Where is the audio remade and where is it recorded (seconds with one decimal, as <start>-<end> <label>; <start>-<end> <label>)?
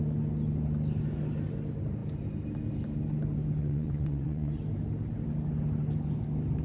0.0-3.6 recorded; 3.6-4.5 remade; 4.5-6.6 recorded